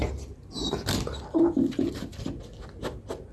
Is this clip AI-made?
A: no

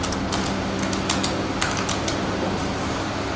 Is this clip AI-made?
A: no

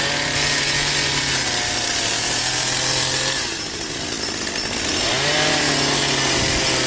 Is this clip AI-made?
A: no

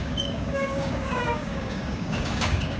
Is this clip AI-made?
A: yes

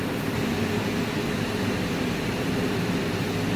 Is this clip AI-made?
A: no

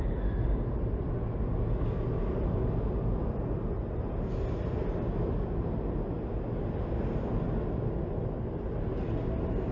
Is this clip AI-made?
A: no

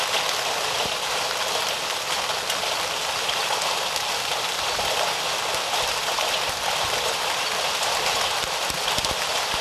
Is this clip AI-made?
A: no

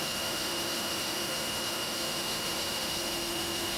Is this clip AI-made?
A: yes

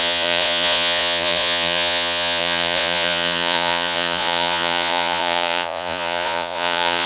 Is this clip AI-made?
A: yes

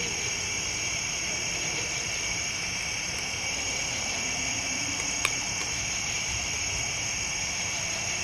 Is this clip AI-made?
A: yes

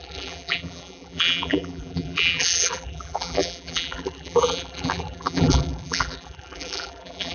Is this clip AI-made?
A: yes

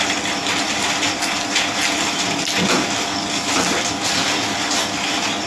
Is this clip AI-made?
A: no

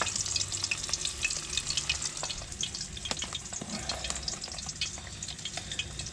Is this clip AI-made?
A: no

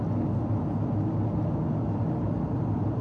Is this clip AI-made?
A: no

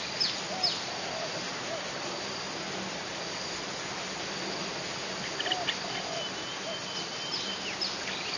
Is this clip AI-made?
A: no